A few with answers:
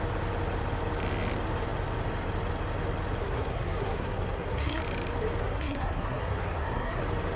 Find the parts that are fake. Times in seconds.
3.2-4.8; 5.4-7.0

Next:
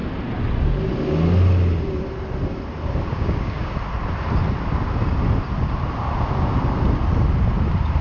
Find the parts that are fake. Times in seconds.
3.1-3.7

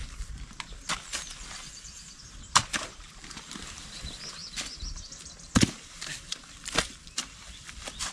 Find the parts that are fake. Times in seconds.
1.0-8.1

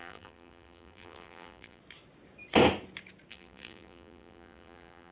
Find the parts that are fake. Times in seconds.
0.0-1.8; 3.3-5.1

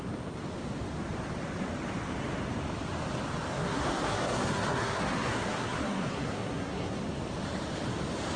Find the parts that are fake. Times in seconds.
3.5-7.0

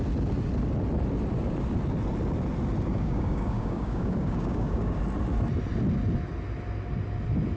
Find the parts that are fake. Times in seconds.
2.9-5.0

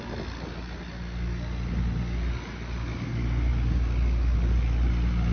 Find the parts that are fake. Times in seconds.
none

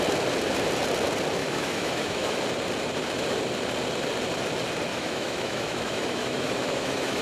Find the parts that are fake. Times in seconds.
1.4-2.4; 4.9-7.2